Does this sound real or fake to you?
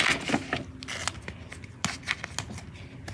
real